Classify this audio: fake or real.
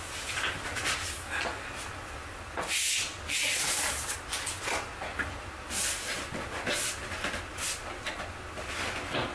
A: real